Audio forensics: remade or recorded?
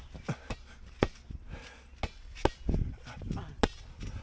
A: recorded